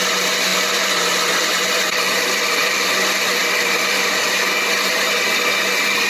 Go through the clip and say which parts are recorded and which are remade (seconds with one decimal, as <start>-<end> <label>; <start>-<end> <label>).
0.0-0.5 recorded; 0.5-2.9 remade; 2.9-3.4 recorded; 3.4-4.1 remade; 4.1-6.1 recorded